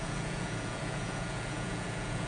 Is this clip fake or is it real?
fake